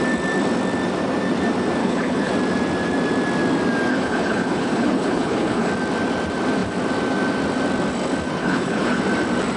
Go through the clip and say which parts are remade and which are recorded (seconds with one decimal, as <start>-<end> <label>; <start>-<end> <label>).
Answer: 0.0-1.8 recorded; 1.8-2.3 remade; 2.3-3.9 recorded; 3.9-5.7 remade; 5.7-8.4 recorded; 8.4-9.0 remade; 9.0-9.6 recorded